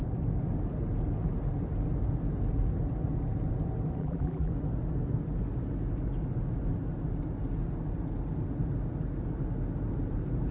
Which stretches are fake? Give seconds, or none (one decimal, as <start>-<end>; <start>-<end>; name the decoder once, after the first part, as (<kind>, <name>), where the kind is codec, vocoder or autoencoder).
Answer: 4.0-4.5 (vocoder, BigVGAN v2)